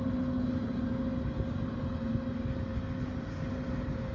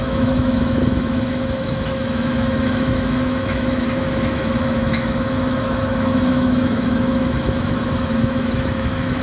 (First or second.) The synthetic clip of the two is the second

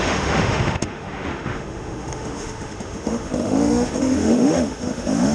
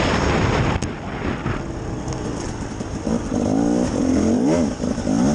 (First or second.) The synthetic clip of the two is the first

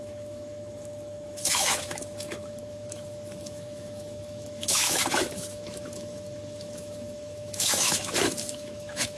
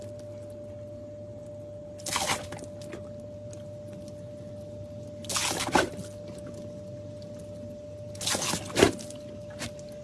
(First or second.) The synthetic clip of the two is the first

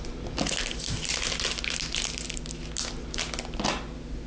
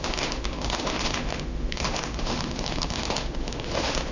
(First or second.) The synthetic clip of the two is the second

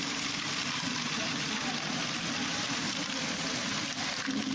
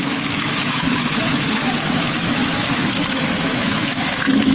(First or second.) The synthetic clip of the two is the second